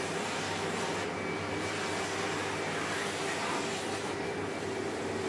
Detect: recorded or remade recorded